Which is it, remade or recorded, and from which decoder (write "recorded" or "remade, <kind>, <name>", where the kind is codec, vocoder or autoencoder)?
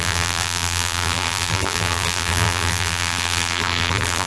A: remade, vocoder, BigVGAN v2